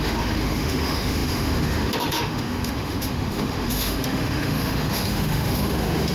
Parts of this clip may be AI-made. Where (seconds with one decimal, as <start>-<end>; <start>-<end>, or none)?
0.0-6.1